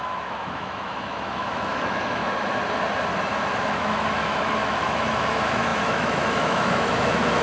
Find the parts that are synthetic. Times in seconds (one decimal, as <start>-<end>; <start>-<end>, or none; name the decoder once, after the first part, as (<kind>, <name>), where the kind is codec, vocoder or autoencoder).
0.0-2.2 (autoencoder, DAC-VAE); 3.6-7.4